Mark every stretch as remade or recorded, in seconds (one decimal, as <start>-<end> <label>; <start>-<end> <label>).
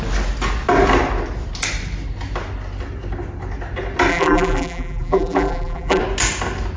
0.0-4.1 recorded; 4.1-6.0 remade; 6.0-6.8 recorded